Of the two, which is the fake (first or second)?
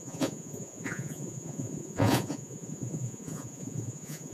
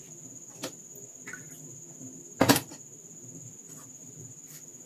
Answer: first